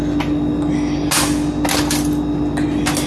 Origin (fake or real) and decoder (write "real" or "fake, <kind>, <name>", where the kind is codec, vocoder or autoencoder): real